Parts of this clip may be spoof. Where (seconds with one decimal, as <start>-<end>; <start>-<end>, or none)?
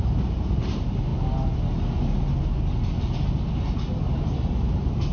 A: 0.0-1.1; 4.2-5.1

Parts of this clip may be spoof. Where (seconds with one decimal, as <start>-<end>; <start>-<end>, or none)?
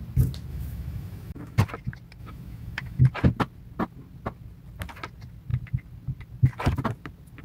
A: 0.5-1.6; 2.2-3.0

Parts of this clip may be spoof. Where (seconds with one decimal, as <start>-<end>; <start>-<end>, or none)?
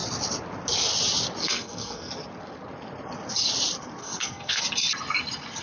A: 1.4-2.1; 4.0-4.6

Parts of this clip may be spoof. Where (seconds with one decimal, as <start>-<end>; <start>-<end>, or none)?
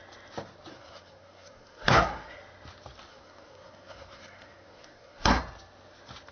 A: 0.7-2.4; 3.1-5.4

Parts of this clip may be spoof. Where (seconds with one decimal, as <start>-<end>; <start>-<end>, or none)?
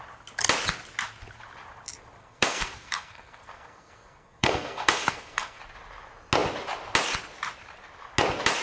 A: 2.2-5.6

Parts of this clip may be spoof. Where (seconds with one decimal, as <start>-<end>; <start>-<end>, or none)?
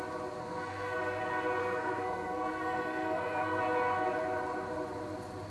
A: 0.4-1.2; 1.6-3.6